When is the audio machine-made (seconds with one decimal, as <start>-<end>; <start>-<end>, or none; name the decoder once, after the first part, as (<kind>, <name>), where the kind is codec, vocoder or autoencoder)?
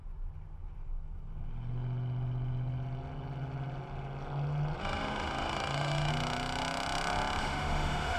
4.8-6.1 (autoencoder, DAC-VAE); 7.4-8.2